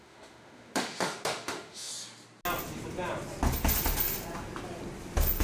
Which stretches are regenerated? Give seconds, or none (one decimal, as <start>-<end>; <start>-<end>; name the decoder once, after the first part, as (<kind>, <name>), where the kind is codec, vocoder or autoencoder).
0.0-1.9 (autoencoder, DAC-VAE)